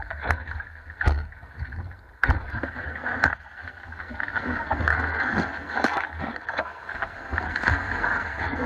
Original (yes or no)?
no